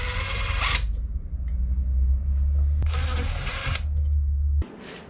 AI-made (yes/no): no